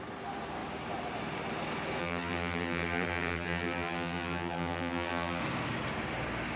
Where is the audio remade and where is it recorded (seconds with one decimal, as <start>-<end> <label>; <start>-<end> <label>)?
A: 0.0-2.0 recorded; 2.0-5.4 remade; 5.4-6.6 recorded

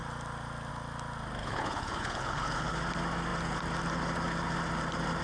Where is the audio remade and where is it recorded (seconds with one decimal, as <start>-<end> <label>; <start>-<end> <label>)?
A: 0.0-1.4 recorded; 1.4-2.8 remade; 2.8-5.2 recorded